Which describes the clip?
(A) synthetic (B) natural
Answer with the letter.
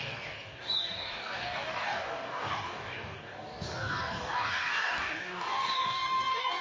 A